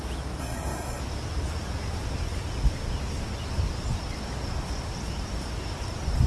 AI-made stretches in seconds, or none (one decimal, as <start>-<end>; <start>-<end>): 0.4-1.0